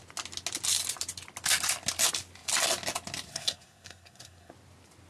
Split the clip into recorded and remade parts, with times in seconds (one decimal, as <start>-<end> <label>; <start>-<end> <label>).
0.0-3.3 recorded; 3.3-4.5 remade; 4.5-5.1 recorded